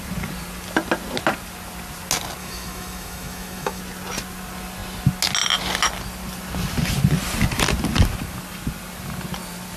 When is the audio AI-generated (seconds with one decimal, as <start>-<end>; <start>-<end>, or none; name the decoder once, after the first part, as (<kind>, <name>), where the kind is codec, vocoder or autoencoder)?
2.4-3.8 (autoencoder, DAC-VAE)